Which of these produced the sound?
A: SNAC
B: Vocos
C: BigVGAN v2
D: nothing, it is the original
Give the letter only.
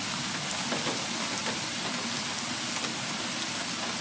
D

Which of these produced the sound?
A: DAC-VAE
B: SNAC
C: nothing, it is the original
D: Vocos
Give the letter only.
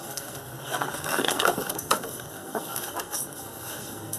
B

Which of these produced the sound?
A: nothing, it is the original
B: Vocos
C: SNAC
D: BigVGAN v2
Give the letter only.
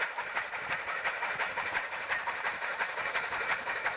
D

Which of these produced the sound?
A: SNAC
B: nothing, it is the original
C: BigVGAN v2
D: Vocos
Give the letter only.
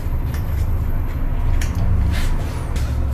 B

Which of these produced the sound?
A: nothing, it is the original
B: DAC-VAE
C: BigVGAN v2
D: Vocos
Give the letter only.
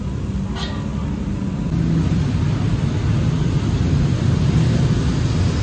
A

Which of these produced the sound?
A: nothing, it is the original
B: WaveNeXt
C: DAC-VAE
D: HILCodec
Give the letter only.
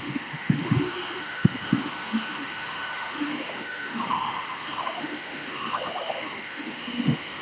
C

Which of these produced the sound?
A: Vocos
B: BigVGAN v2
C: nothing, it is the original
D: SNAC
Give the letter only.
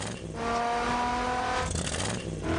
C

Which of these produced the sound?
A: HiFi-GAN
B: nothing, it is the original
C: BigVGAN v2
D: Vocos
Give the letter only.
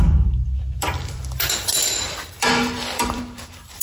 C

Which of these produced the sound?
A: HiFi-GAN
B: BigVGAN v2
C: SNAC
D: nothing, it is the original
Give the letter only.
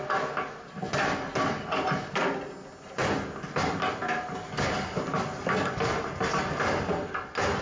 D